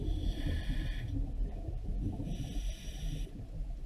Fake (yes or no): yes